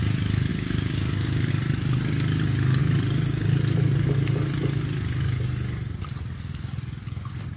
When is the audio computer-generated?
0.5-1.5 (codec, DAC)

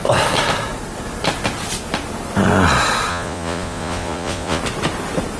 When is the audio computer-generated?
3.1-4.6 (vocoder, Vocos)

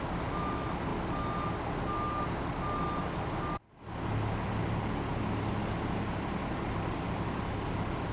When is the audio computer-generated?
none